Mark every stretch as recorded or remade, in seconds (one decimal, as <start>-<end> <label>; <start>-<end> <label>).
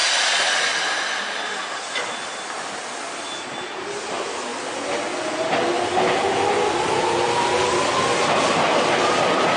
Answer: 0.0-9.6 recorded